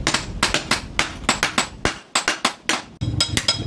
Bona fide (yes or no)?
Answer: yes